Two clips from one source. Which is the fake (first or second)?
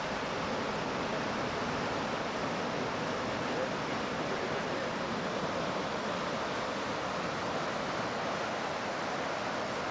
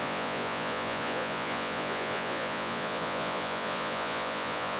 second